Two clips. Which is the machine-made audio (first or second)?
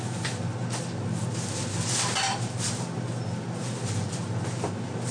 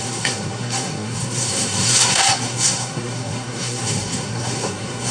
second